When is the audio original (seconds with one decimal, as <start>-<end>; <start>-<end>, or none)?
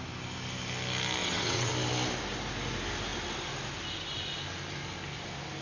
0.0-1.2; 1.7-5.6